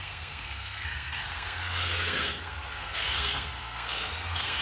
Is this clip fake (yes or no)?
yes